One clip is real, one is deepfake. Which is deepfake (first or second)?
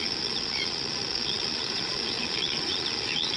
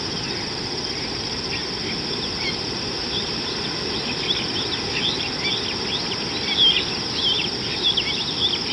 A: first